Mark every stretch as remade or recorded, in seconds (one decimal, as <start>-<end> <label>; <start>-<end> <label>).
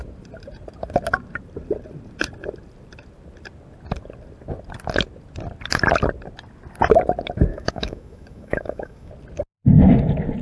0.0-7.5 recorded; 7.5-9.1 remade; 9.1-10.4 recorded